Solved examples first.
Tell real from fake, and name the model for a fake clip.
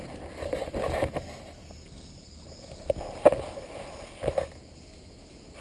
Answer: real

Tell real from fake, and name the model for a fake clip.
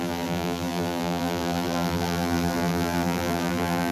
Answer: fake, vocoder, BigVGAN v2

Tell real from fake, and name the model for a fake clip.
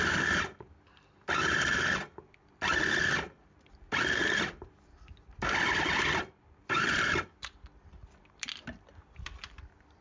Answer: fake, vocoder, BigVGAN v2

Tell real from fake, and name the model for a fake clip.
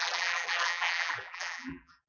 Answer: fake, vocoder, BigVGAN v2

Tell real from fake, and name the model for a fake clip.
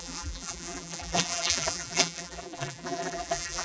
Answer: fake, vocoder, BigVGAN v2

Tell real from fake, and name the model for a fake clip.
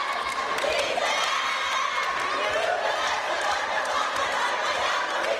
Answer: real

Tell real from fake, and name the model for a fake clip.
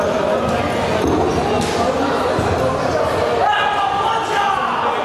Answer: real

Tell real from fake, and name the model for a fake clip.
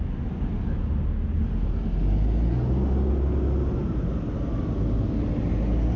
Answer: real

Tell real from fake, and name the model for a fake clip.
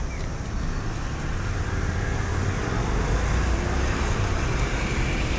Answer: real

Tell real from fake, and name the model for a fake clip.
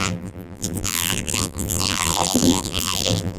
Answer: fake, vocoder, BigVGAN v2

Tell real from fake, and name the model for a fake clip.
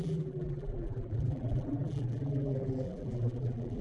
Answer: fake, vocoder, BigVGAN v2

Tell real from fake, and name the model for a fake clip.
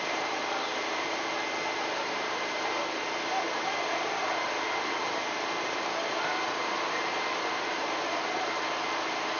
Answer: fake, vocoder, BigVGAN v2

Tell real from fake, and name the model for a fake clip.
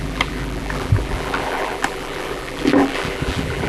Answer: fake, vocoder, BigVGAN v2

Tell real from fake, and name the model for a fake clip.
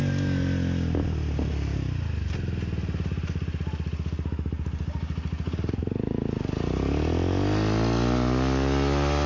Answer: real